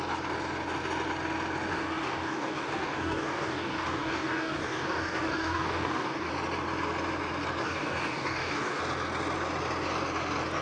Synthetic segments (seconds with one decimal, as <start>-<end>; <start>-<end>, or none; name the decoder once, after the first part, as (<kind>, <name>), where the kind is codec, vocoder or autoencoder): 1.7-6.3 (codec, DAC); 7.6-8.8